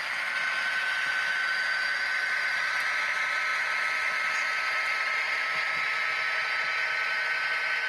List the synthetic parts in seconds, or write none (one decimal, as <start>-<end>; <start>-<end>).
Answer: none